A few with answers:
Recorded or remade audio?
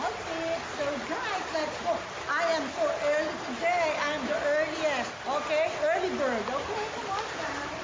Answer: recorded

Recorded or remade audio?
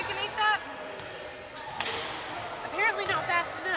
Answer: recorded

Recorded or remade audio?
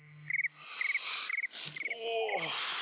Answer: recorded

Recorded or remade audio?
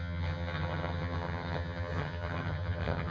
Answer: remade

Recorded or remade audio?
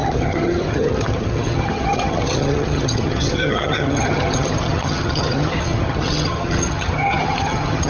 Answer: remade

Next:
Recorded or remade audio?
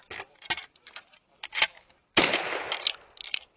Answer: recorded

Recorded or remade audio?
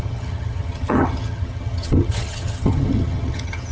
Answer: remade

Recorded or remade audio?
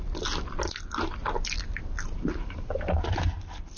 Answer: recorded